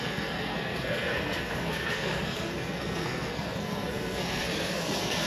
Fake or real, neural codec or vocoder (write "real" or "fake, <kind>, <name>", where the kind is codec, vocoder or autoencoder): fake, codec, SNAC